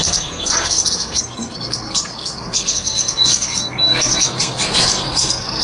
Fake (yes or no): yes